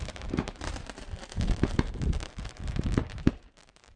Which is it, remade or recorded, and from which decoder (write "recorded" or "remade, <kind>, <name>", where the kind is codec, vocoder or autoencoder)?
remade, vocoder, BigVGAN v2